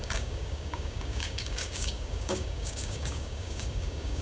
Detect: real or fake fake